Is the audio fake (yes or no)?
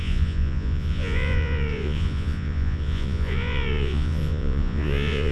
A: yes